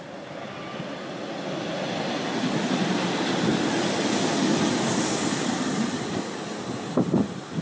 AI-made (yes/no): no